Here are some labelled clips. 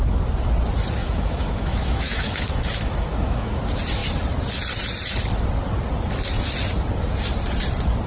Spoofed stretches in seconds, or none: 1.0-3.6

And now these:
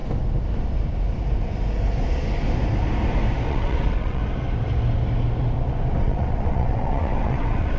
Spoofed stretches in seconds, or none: 3.5-4.2; 6.0-7.8

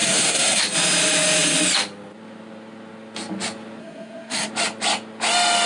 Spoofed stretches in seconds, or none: 0.0-0.6; 3.8-4.5

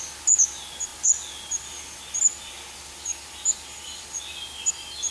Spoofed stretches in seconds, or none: none

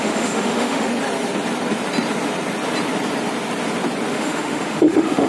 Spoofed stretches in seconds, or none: 0.0-0.9; 4.1-5.3

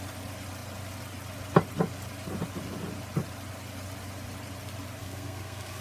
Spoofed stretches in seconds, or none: 5.0-5.8